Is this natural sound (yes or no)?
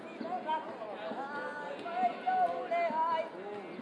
yes